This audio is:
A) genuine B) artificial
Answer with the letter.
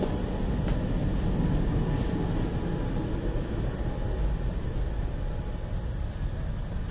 A